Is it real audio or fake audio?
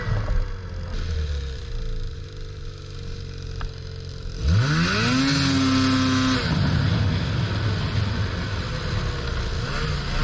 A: real